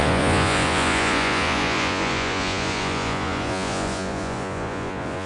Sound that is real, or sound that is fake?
fake